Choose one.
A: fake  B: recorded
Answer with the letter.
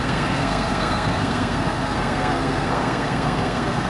A